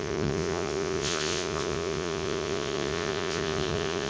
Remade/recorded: remade